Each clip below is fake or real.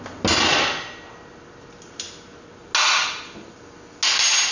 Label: real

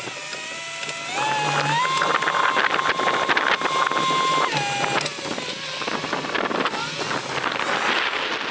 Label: real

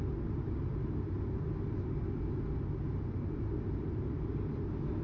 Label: real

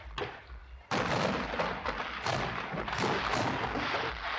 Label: real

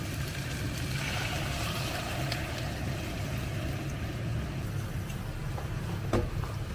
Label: real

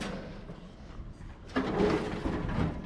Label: real